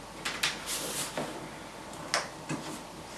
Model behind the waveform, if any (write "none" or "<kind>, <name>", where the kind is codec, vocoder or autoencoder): none